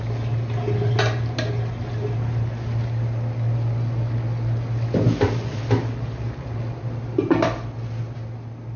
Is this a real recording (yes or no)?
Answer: yes